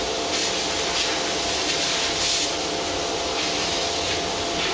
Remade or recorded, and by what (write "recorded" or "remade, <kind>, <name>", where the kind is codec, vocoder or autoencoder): recorded